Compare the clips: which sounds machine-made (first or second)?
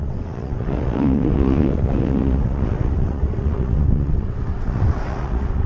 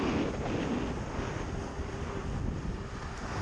first